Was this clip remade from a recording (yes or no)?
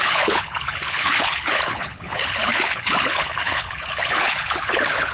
yes